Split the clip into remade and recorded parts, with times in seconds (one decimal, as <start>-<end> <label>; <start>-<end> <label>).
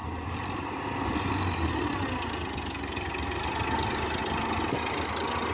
0.0-5.5 recorded